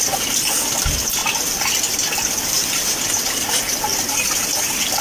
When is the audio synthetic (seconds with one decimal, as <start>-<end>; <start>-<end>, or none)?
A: none